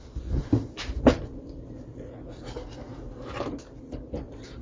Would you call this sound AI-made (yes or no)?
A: no